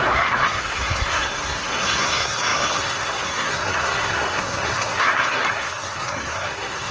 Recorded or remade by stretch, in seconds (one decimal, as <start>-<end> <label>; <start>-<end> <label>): 0.0-6.9 remade